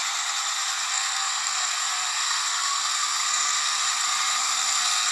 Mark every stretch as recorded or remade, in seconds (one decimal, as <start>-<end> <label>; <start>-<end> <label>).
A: 0.0-0.9 recorded; 0.9-3.8 remade; 3.8-4.4 recorded; 4.4-5.1 remade